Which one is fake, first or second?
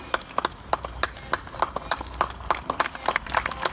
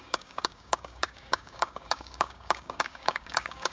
second